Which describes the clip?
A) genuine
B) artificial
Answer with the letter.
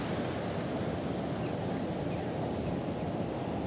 A